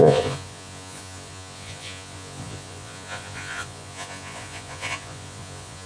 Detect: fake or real fake